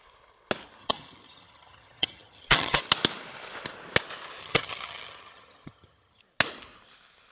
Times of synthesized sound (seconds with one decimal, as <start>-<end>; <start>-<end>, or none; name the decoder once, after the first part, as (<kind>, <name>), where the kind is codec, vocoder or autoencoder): 0.8-2.8 (vocoder, HiFi-GAN); 4.4-6.2